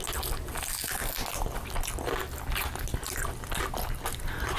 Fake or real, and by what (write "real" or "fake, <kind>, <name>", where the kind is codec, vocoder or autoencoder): real